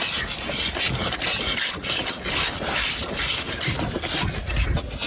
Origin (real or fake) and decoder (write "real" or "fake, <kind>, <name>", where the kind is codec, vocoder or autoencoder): real